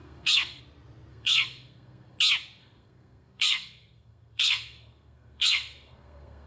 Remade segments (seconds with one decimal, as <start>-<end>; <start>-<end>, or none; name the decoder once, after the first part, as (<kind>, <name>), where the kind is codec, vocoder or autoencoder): 0.0-0.6 (codec, SNAC); 1.1-2.2; 2.6-6.5